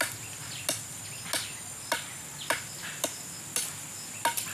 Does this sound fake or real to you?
real